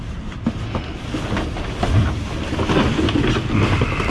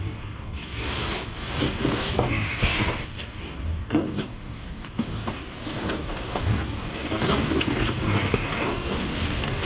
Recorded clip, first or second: first